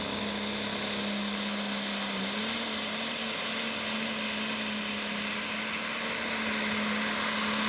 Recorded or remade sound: recorded